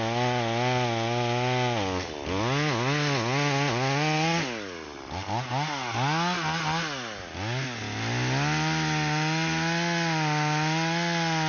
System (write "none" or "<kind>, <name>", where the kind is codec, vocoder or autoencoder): none